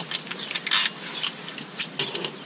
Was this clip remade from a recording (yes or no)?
no